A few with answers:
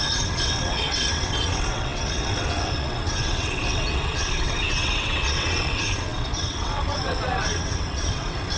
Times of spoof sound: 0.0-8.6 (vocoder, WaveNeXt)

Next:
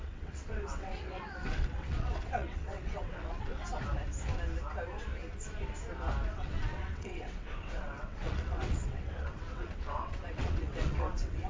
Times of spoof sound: 0.0-3.5 (vocoder, WaveNeXt); 6.3-11.5

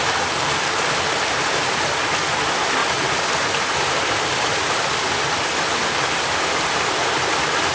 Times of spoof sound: none

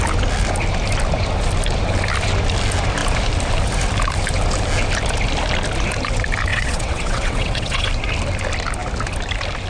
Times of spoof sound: 6.5-7.9 (vocoder, WaveNeXt)

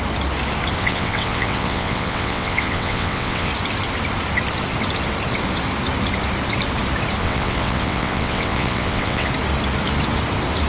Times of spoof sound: 0.8-3.5 (vocoder, WaveNeXt); 7.2-9.3

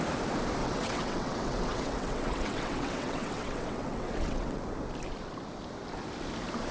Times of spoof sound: 0.6-4.6 (vocoder, WaveNeXt)

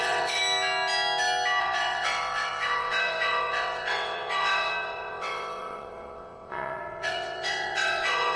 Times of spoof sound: 0.0-0.4 (vocoder, WaveNeXt); 1.6-8.4